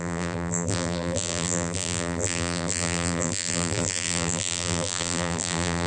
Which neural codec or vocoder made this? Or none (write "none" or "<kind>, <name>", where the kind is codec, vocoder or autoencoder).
vocoder, BigVGAN v2